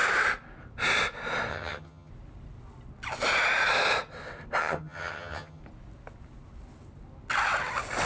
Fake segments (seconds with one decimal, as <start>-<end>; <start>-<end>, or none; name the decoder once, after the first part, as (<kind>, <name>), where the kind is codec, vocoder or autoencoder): 1.5-2.1 (vocoder, HiFi-GAN); 4.6-5.6